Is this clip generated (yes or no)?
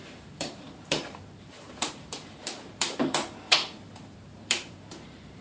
yes